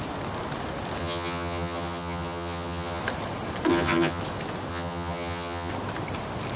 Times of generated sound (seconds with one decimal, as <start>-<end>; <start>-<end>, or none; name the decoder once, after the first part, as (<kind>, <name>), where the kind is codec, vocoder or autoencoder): 1.0-3.0 (vocoder, HiFi-GAN); 3.7-4.2; 4.7-5.7